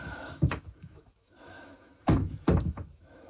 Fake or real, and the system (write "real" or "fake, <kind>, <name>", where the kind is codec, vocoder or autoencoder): fake, autoencoder, DAC-VAE